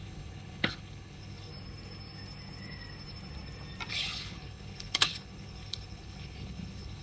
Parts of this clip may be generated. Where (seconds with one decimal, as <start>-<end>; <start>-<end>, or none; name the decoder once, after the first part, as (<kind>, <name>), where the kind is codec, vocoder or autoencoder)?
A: 0.0-1.5 (codec, HILCodec); 3.9-7.0